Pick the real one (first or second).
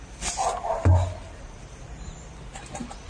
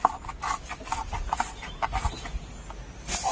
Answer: second